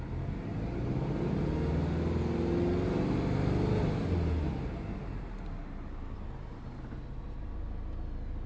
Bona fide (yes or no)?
yes